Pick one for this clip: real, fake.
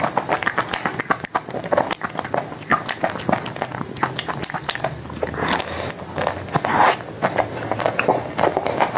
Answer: real